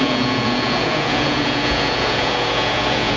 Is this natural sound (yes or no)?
no